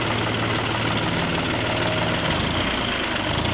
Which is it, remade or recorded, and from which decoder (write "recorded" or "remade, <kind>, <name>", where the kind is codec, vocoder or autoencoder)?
recorded